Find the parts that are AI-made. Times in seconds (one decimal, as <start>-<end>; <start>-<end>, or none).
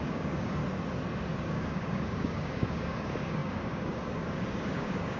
0.0-0.6; 1.4-5.2